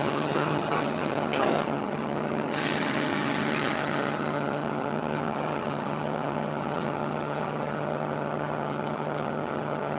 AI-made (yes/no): yes